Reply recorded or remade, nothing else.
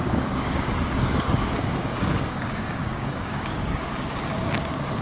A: remade